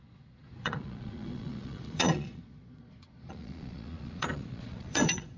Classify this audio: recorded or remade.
remade